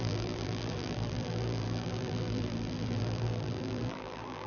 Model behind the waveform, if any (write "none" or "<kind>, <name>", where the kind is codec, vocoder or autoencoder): vocoder, BigVGAN v2